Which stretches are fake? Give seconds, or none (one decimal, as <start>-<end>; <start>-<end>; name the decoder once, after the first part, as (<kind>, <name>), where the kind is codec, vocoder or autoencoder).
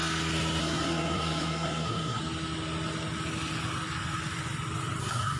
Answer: 0.6-2.2 (codec, SNAC); 5.0-5.4